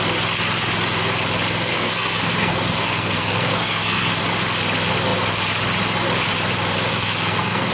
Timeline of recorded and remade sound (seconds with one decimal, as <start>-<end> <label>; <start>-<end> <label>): 0.0-1.7 recorded; 1.7-4.2 remade; 4.2-6.9 recorded; 6.9-7.7 remade